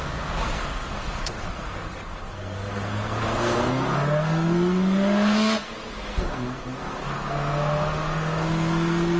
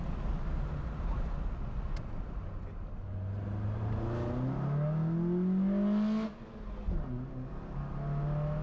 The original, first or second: second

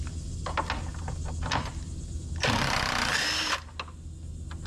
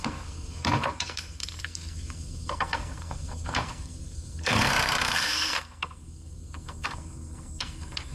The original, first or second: first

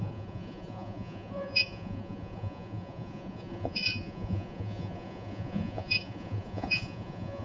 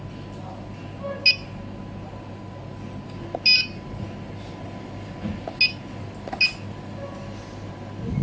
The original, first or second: second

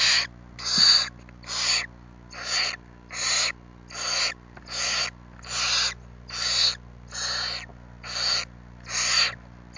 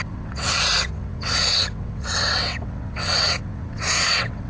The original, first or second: first